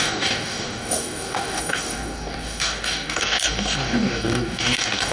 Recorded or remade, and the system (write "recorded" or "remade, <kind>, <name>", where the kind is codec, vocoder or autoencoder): remade, codec, DAC